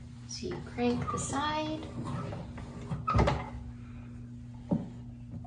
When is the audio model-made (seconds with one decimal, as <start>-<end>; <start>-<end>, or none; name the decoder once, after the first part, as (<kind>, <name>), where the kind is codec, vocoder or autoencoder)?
none